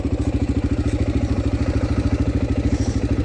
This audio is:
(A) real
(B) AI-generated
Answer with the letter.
B